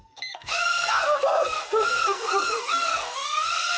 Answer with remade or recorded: remade